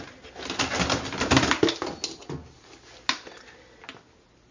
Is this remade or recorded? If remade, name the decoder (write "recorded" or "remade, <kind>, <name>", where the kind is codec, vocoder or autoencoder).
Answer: recorded